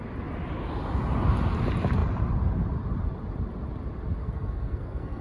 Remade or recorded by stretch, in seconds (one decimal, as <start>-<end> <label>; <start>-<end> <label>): 0.0-4.2 recorded; 4.2-5.2 remade